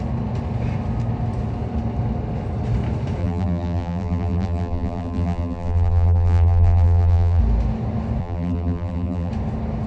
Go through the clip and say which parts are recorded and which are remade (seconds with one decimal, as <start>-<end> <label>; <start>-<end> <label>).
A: 0.0-3.2 recorded; 3.2-7.4 remade; 7.4-8.2 recorded; 8.2-9.3 remade; 9.3-9.9 recorded